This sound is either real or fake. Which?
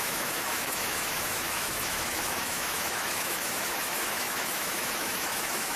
fake